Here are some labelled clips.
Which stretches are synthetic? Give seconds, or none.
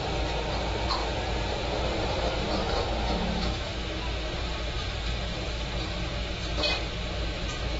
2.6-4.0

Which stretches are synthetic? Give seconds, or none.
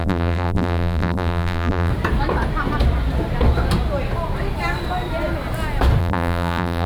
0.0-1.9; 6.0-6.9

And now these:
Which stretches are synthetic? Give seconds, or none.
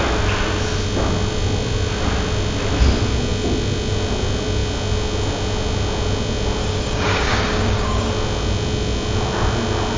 6.6-8.1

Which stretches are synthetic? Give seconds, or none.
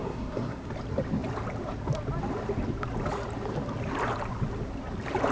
0.0-0.7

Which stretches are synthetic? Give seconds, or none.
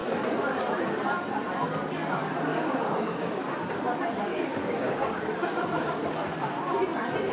2.5-3.2; 4.3-5.9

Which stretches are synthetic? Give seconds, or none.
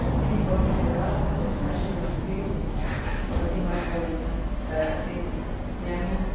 0.9-4.7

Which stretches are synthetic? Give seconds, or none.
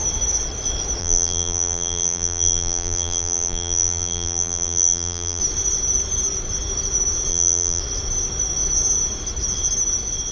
1.0-5.4; 7.3-7.8